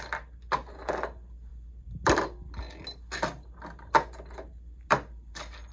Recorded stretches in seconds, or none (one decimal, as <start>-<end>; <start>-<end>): 0.0-5.7